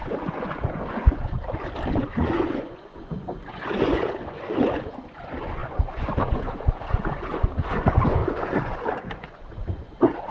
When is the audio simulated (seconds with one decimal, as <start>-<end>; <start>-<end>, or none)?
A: 0.0-1.4; 1.9-10.3